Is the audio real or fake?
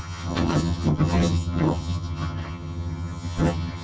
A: fake